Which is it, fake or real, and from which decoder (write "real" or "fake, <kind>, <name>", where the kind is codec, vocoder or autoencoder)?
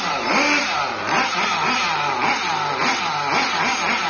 real